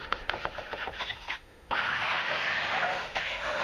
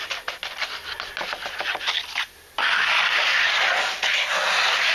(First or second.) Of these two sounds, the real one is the second